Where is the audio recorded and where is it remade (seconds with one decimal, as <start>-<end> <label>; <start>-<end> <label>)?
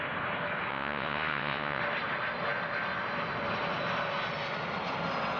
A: 0.0-0.7 recorded; 0.7-1.8 remade; 1.8-5.4 recorded